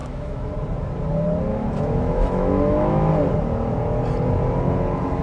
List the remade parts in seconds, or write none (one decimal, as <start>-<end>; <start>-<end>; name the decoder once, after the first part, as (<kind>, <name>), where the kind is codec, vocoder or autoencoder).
0.0-0.5 (autoencoder, DAC-VAE); 1.5-3.1